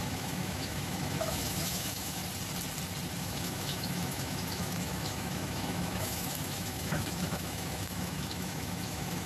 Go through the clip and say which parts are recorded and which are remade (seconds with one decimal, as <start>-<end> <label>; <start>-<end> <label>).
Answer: 0.0-2.2 remade; 2.2-3.2 recorded; 3.2-9.3 remade